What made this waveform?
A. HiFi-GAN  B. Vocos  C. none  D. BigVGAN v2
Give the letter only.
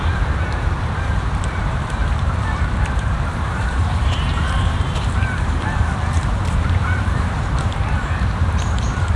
D